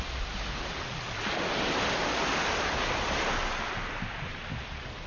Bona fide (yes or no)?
yes